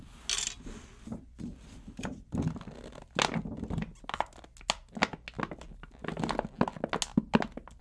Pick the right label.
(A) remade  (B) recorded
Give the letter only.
B